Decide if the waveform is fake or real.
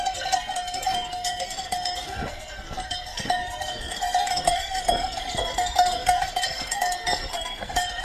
fake